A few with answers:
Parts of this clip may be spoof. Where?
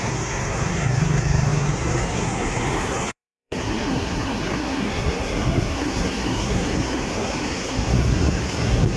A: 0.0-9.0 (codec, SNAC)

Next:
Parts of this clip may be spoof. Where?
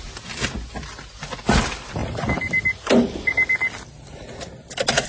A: none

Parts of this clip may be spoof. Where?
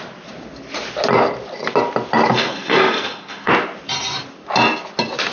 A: 2.3-3.5 (codec, SNAC)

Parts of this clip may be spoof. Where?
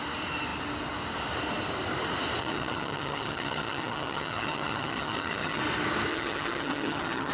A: 2.4-5.6 (vocoder, HiFi-GAN); 6.1-7.3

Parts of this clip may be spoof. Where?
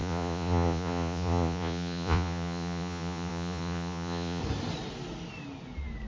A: 0.0-4.4 (vocoder, Vocos)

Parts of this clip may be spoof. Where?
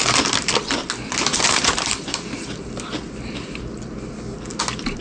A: 1.3-2.7 (vocoder, BigVGAN v2)